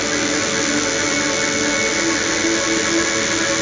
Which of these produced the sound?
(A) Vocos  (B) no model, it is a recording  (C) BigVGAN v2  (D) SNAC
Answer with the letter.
B